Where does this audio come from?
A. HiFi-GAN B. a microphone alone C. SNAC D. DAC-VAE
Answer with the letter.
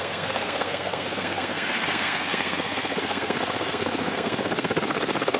C